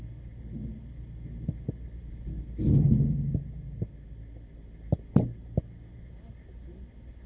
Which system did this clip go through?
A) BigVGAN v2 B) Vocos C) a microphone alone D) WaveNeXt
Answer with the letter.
C